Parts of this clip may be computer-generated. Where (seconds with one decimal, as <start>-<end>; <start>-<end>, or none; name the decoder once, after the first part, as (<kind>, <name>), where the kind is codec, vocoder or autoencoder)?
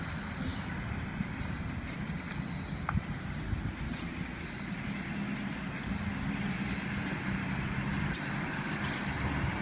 none